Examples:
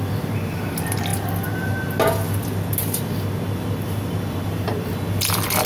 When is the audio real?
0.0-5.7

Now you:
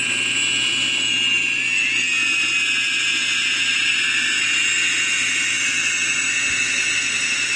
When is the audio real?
0.0-7.6

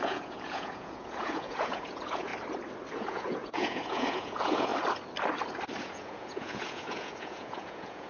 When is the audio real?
2.3-3.0; 4.7-5.8

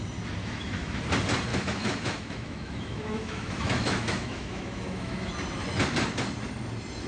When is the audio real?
0.0-0.4; 1.0-1.5; 5.3-7.1

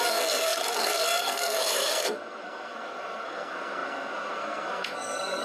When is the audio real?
none

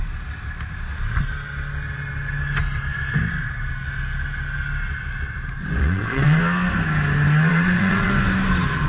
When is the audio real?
0.0-5.8; 6.4-7.5; 8.1-8.9

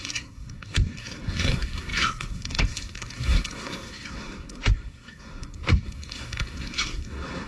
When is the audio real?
none